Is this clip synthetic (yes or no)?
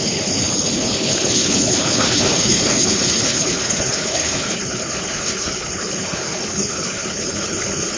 yes